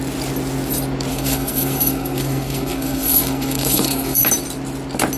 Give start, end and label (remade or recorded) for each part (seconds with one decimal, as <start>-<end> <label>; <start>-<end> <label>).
0.0-1.1 recorded; 1.1-4.2 remade; 4.2-5.2 recorded